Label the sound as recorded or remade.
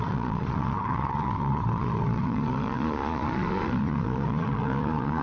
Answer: remade